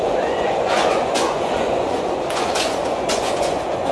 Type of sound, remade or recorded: remade